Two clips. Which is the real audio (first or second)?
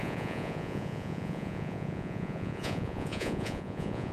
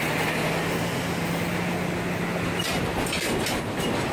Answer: second